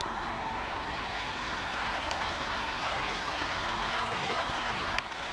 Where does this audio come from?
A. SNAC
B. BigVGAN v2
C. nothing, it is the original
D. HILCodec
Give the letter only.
A